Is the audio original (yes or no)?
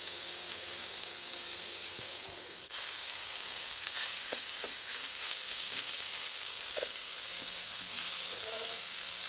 no